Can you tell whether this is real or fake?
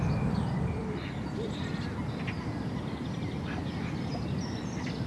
real